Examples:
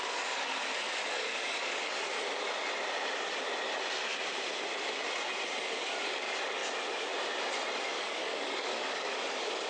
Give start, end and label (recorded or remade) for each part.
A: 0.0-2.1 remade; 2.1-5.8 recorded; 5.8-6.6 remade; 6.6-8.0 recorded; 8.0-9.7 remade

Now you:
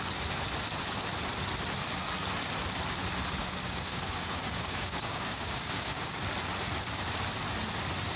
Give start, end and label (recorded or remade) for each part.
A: 0.0-3.4 recorded; 3.4-6.2 remade; 6.2-8.2 recorded

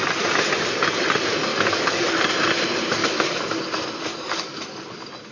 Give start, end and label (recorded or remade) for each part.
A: 0.0-1.5 recorded; 1.5-2.1 remade; 2.1-3.0 recorded; 3.0-3.6 remade; 3.6-4.1 recorded; 4.1-4.6 remade; 4.6-5.3 recorded